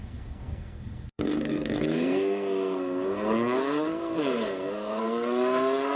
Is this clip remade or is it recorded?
remade